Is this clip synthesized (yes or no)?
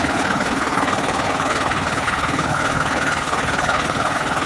yes